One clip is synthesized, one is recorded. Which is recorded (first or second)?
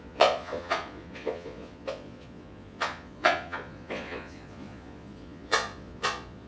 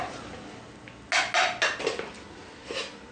second